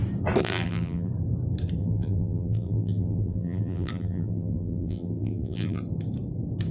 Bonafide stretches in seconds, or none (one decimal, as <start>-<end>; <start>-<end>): 0.0-0.4; 1.1-1.8; 5.8-6.7